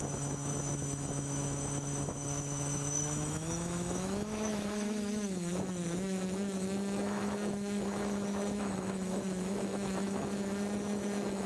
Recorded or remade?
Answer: remade